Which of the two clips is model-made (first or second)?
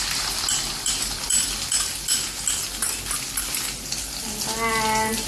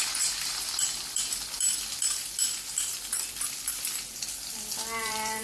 second